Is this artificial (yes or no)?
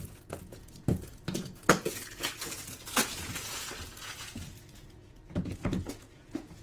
yes